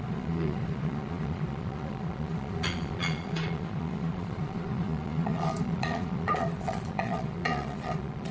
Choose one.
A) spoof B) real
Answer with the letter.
A